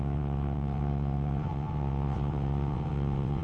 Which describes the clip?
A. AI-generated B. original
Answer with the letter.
A